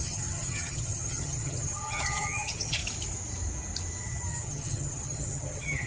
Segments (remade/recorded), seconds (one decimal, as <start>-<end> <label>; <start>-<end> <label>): 0.0-2.8 remade; 2.8-4.0 recorded; 4.0-5.9 remade